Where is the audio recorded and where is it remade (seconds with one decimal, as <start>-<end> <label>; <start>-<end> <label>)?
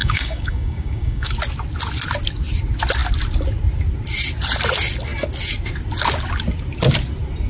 0.0-1.3 remade; 1.3-7.5 recorded